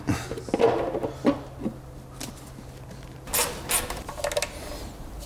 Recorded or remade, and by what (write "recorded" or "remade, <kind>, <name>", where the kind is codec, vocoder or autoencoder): recorded